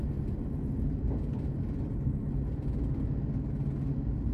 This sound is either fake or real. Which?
real